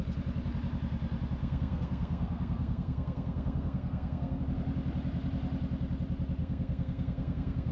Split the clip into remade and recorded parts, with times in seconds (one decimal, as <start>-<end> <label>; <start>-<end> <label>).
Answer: 0.0-1.4 recorded; 1.4-4.4 remade; 4.4-6.4 recorded; 6.4-7.7 remade